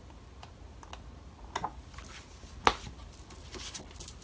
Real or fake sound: real